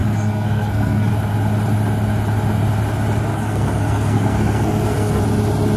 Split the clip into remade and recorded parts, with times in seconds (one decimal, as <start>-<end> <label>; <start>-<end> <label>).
0.0-1.1 remade; 1.1-3.3 recorded; 3.3-5.2 remade; 5.2-5.8 recorded